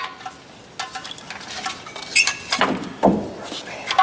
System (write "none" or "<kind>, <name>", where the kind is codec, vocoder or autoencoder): none